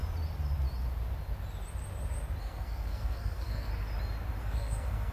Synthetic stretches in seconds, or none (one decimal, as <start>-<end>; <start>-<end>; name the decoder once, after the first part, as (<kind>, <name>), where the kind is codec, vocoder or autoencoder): 2.4-3.7 (codec, SNAC); 4.4-5.1